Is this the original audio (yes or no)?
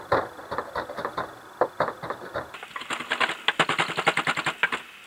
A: yes